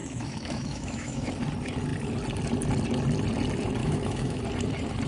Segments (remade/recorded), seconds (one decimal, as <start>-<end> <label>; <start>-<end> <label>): 0.0-1.3 remade; 1.3-3.8 recorded; 3.8-4.4 remade; 4.4-5.1 recorded